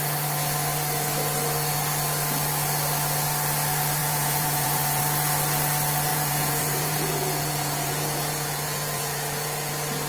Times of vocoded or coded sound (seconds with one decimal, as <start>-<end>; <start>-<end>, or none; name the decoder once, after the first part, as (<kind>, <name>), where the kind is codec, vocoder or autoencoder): 4.0-5.0 (vocoder, Vocos); 6.1-9.7